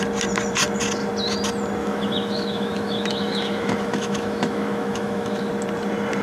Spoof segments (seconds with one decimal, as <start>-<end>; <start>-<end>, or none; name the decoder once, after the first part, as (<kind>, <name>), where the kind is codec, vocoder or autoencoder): 1.8-5.5 (autoencoder, DAC-VAE)